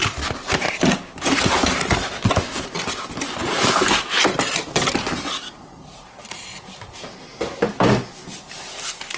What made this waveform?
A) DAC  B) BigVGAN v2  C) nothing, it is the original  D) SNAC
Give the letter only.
C